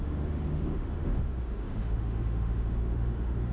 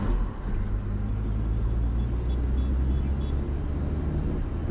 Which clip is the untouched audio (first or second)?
second